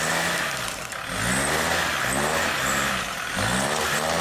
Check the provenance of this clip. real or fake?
real